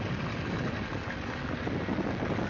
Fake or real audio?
real